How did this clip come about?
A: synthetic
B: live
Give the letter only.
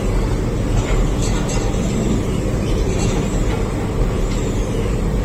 B